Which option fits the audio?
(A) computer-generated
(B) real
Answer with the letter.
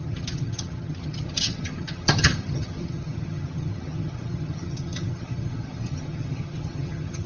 A